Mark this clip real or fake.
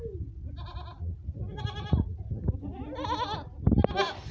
real